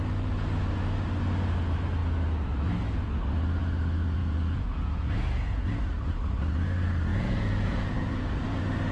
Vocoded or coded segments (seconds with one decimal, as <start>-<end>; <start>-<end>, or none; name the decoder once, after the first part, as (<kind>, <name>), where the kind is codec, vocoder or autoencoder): 4.2-5.6 (vocoder, Vocos); 7.1-8.1